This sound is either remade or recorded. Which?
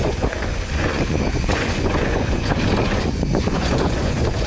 remade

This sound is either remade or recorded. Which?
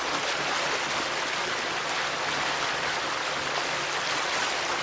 recorded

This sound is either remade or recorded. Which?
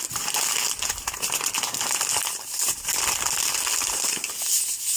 recorded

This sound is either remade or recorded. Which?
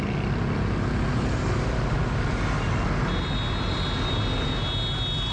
recorded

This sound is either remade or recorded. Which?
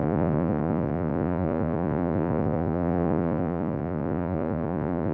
remade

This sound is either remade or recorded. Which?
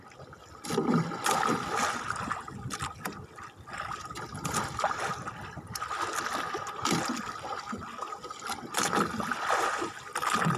recorded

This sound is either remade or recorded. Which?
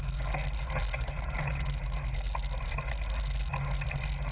recorded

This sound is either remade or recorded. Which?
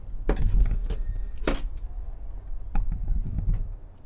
recorded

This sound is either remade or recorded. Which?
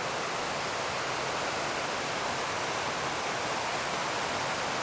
recorded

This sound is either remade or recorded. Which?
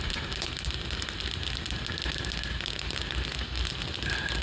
recorded